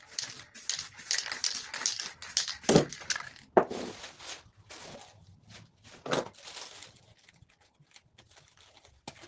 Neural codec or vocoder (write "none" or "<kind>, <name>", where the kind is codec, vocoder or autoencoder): none